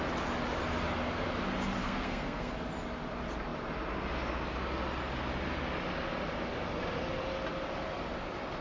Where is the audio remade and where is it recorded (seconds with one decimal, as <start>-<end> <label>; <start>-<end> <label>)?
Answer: 0.0-1.8 recorded; 1.8-2.5 remade; 2.5-8.6 recorded